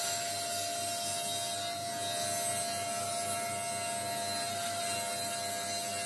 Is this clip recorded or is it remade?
recorded